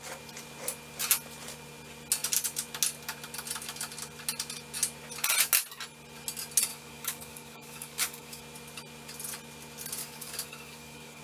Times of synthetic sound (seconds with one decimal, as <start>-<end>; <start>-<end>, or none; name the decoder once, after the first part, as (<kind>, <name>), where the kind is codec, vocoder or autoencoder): 6.7-8.4 (codec, DAC); 10.0-11.2